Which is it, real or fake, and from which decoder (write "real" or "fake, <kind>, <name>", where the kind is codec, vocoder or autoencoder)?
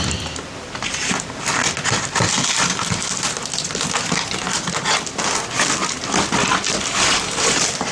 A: real